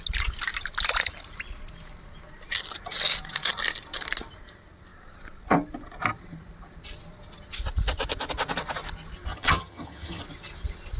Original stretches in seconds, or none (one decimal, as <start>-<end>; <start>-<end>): 0.0-9.3; 10.2-11.0